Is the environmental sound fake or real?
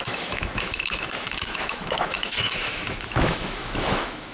fake